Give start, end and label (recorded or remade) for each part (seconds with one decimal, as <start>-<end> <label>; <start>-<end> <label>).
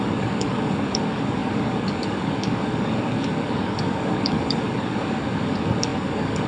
0.0-6.5 remade